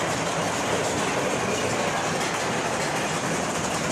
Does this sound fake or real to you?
real